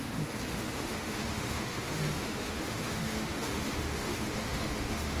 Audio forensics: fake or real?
fake